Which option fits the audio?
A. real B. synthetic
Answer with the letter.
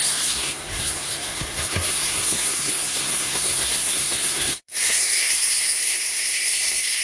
B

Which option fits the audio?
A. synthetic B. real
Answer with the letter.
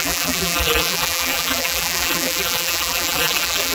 A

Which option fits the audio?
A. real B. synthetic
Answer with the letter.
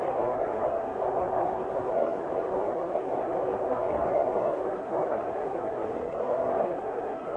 B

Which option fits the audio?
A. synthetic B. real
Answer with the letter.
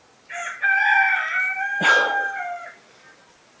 B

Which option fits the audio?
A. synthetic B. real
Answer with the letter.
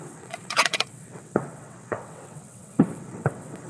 A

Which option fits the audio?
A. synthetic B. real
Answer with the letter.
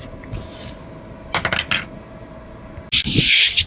B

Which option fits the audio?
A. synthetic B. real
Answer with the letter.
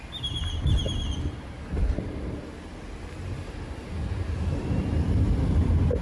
B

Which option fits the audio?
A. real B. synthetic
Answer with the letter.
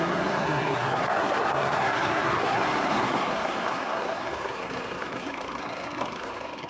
B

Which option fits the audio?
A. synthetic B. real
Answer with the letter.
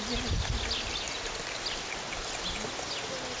B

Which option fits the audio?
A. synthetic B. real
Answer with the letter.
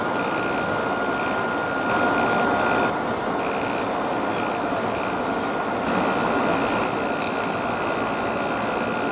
B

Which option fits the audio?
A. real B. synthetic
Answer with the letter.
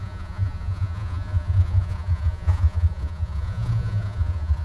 B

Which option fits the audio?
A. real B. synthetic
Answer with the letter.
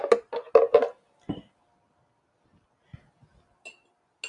A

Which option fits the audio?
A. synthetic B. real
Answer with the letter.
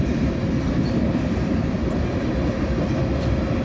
B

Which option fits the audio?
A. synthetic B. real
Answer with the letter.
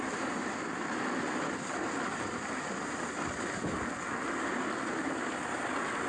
B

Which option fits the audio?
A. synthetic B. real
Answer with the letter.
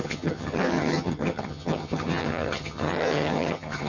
A